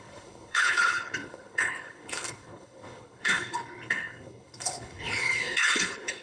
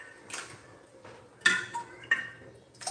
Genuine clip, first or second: second